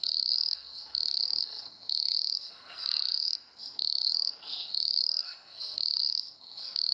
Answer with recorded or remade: remade